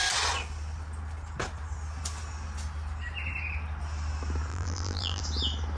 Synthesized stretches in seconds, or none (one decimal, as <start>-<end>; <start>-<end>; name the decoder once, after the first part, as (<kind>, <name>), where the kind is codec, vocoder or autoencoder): 4.5-5.2 (vocoder, BigVGAN v2)